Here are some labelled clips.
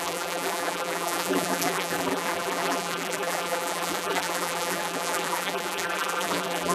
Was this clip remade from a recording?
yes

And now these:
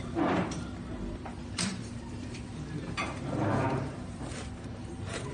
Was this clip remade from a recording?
yes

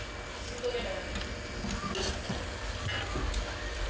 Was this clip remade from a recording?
no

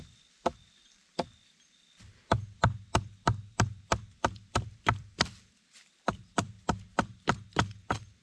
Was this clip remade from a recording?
yes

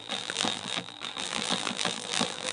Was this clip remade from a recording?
yes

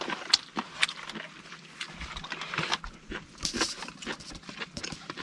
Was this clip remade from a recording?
yes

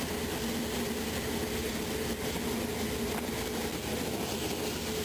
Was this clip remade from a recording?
no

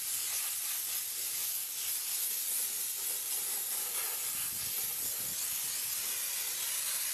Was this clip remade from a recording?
no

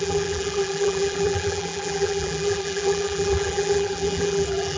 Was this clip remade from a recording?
yes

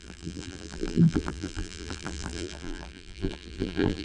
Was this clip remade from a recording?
yes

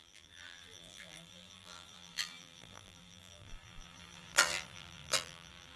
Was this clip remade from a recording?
yes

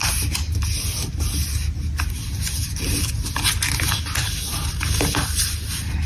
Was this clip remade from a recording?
no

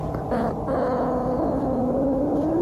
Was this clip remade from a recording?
yes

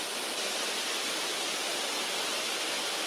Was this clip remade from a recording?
yes